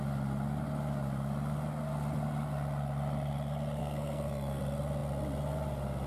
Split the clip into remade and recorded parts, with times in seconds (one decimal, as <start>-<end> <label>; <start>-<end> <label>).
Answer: 0.0-3.8 recorded; 3.8-4.6 remade; 4.6-6.1 recorded